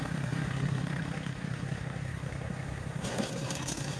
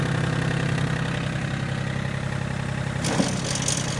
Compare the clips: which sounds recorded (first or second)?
second